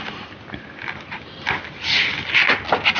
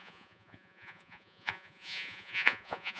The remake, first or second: second